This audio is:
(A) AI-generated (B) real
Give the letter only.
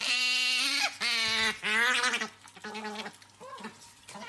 B